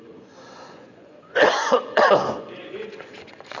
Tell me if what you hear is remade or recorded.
remade